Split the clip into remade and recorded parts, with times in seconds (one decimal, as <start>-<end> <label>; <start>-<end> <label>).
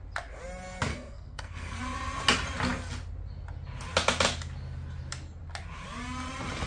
0.0-0.9 recorded; 0.9-1.8 remade; 1.8-6.7 recorded